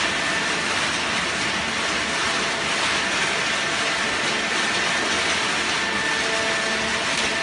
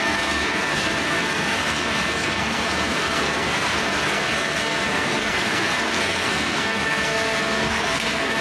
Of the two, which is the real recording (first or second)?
first